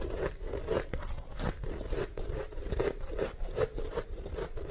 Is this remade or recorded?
recorded